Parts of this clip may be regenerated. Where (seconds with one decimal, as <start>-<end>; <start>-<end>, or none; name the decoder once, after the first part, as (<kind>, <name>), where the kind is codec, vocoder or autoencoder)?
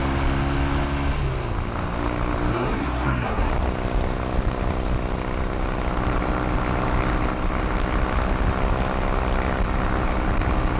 2.5-3.5 (codec, SNAC)